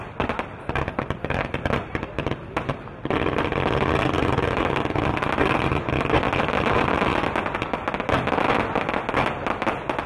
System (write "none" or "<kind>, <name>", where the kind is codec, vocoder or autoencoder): none